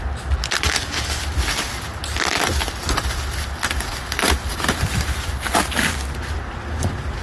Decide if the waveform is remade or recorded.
recorded